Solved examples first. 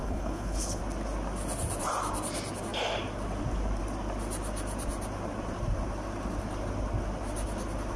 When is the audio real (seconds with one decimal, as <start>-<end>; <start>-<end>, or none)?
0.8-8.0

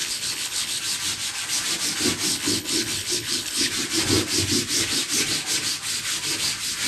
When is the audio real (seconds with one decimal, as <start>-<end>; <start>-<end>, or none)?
0.8-2.3; 3.7-6.9

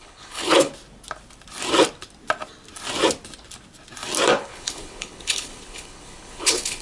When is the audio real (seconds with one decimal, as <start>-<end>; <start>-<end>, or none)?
0.7-4.4

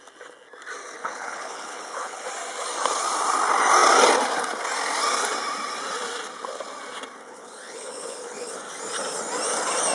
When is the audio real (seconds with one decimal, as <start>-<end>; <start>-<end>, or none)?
0.0-1.0; 2.3-7.2; 8.5-9.9